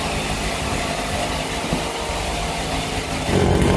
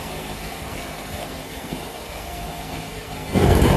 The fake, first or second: second